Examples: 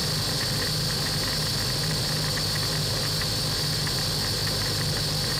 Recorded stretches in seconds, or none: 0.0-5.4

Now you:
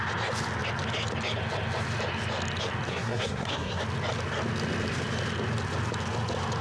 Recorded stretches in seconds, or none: 0.0-2.9; 3.8-6.6

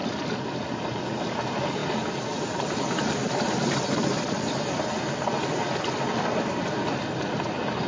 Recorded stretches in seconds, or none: 0.0-7.9

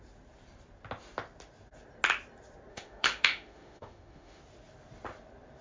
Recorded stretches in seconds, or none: 0.0-2.7; 4.4-5.6